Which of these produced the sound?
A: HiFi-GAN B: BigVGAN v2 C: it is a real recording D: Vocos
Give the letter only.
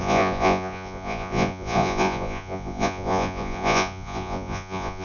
D